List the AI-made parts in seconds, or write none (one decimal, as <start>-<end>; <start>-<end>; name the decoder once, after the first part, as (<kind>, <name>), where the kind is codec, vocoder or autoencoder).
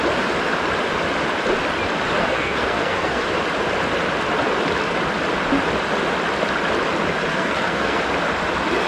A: 2.2-3.2 (codec, SNAC); 7.3-8.0